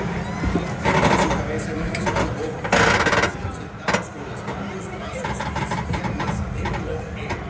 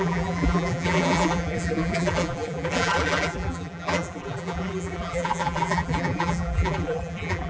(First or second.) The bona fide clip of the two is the first